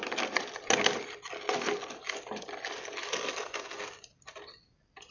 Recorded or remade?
recorded